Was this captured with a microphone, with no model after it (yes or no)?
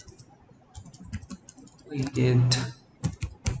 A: yes